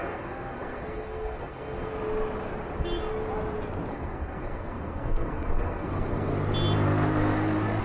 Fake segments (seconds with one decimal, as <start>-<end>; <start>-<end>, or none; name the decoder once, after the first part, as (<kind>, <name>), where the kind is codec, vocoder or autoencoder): 0.0-1.9 (codec, SNAC); 3.9-6.3

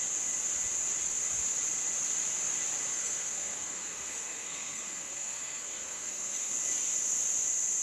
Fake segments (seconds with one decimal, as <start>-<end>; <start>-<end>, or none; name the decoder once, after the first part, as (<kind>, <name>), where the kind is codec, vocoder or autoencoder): 2.9-6.5 (codec, SNAC)

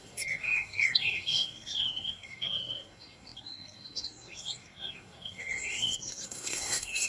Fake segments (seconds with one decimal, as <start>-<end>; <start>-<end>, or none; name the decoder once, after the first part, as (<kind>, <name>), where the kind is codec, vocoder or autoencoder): 0.0-7.1 (codec, SNAC)

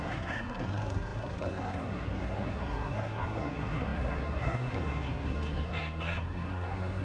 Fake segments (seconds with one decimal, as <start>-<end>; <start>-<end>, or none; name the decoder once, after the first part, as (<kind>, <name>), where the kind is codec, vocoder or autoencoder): 0.0-7.0 (codec, SNAC)

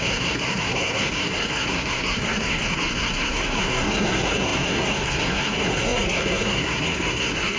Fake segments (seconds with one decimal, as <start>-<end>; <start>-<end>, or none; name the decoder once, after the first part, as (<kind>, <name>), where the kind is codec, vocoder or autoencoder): 0.0-7.6 (codec, SNAC)

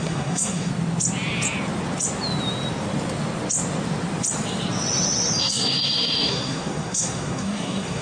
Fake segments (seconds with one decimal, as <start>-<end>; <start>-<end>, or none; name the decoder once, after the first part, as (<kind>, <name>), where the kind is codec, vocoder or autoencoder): 0.0-0.7 (codec, SNAC); 5.4-8.0